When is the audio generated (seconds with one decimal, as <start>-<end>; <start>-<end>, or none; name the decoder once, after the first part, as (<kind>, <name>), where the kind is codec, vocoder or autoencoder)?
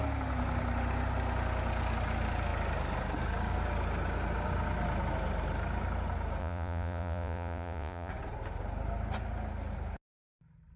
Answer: 6.4-8.1 (vocoder, Vocos)